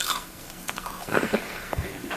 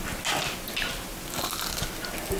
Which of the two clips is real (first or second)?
second